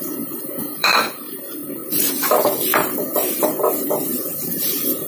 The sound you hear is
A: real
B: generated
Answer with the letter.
B